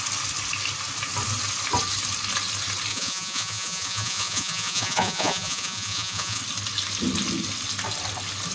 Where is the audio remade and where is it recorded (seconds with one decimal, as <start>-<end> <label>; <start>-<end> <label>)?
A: 0.0-2.9 recorded; 2.9-6.4 remade; 6.4-8.5 recorded